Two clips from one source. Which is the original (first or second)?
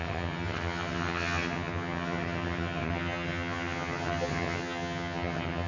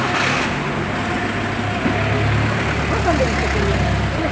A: second